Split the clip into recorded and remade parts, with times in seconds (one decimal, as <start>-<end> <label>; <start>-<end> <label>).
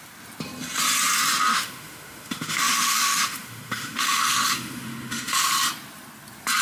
0.0-1.5 recorded; 1.5-5.5 remade; 5.5-6.6 recorded